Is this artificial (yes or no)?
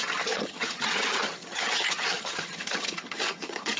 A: yes